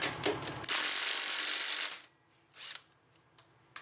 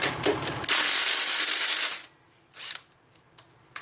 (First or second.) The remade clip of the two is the second